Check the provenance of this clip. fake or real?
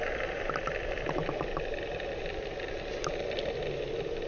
real